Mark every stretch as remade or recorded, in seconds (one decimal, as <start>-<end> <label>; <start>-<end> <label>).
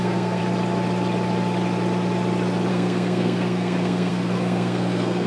0.0-0.4 remade; 0.4-2.7 recorded; 2.7-5.3 remade